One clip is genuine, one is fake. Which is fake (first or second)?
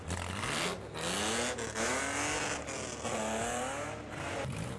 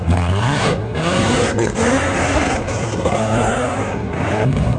second